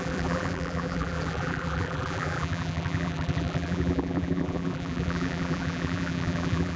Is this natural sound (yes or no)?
no